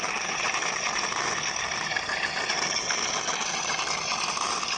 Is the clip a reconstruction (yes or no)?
no